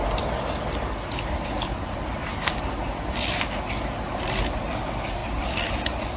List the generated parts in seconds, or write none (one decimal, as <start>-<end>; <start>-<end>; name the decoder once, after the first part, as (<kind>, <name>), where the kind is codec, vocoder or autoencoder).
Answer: none